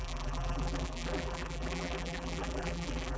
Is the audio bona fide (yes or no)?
no